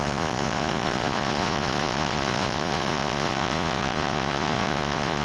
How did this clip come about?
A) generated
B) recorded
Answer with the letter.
A